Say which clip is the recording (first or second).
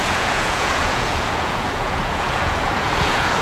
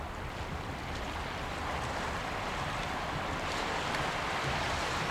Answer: second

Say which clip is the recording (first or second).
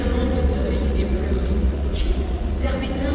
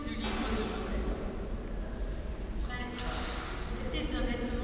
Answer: second